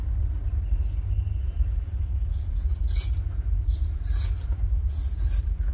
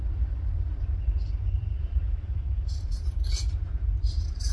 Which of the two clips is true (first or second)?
first